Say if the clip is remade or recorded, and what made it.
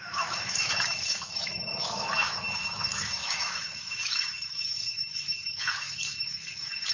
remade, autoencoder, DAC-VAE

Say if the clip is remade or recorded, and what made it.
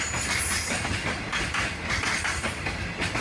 recorded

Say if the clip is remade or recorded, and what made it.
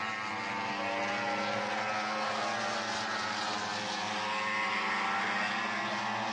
recorded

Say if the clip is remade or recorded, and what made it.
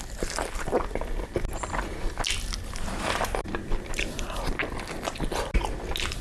recorded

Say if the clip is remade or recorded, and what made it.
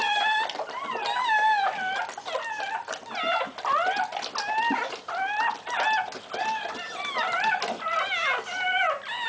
recorded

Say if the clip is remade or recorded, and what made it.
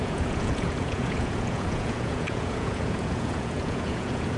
remade, vocoder, Vocos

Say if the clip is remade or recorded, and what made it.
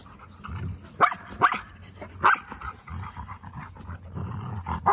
recorded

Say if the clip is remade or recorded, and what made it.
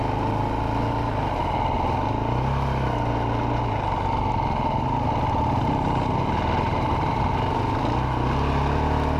recorded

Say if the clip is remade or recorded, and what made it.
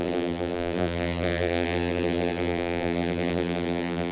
remade, vocoder, BigVGAN v2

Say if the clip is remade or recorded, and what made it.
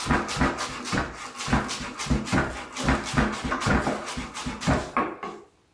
recorded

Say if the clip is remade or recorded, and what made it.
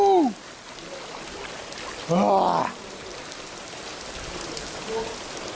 recorded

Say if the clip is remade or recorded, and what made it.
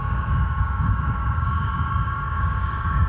remade, codec, DAC